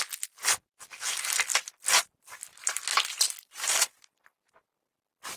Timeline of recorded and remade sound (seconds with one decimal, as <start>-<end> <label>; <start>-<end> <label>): 0.0-5.4 recorded